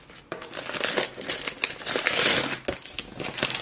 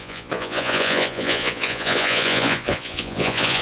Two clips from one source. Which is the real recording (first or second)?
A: first